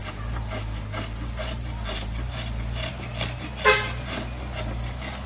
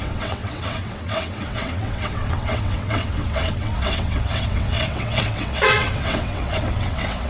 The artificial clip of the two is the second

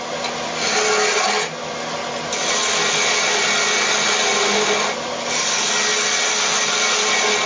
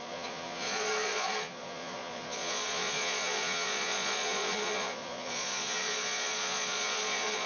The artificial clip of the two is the second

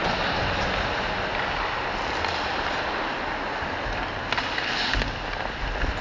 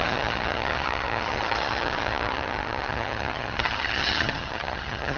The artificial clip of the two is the second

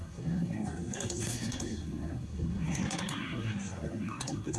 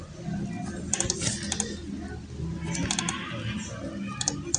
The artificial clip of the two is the first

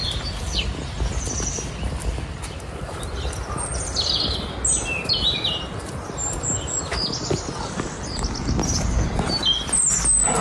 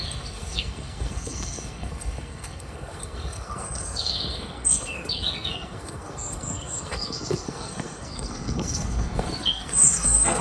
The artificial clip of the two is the second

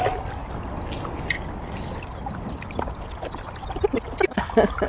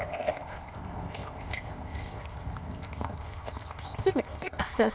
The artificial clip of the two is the second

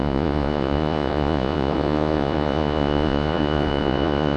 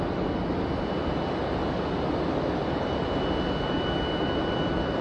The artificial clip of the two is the first